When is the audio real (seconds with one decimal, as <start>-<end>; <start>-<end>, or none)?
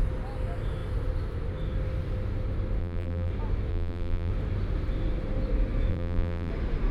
0.0-2.8; 3.3-3.7; 4.3-5.9; 6.5-6.9